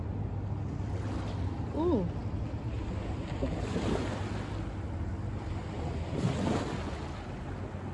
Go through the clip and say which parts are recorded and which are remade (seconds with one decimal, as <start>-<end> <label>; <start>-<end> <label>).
0.0-7.9 recorded